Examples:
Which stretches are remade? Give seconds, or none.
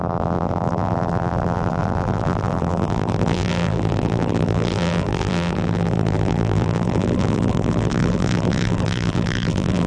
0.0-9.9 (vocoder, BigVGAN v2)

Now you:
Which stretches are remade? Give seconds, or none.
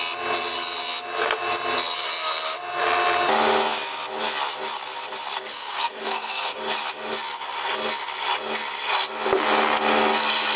5.5-6.6 (codec, SNAC)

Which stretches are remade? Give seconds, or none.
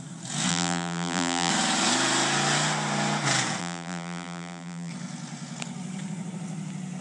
0.5-1.5 (vocoder, BigVGAN v2); 3.6-4.9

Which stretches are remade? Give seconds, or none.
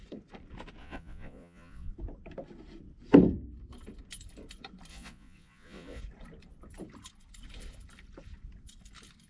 0.8-1.9 (vocoder, Vocos); 4.9-6.0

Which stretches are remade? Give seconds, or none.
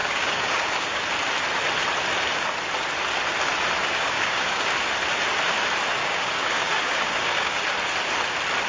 0.0-1.0 (codec, DAC); 3.8-4.7; 6.0-7.6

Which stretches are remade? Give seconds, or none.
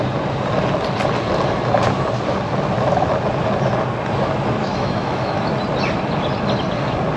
4.6-5.4 (autoencoder, DAC-VAE)